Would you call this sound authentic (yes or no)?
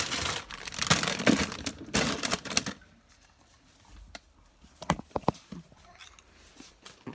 no